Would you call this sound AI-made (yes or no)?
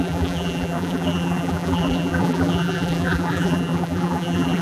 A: yes